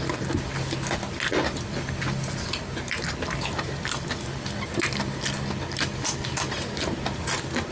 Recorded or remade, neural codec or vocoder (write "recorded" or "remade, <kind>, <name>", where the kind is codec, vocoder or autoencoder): recorded